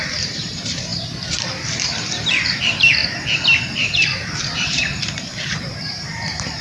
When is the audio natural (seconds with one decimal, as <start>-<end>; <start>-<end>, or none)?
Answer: 3.0-3.6